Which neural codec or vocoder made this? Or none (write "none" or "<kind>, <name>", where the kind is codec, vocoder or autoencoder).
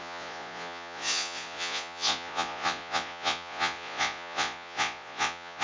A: vocoder, Vocos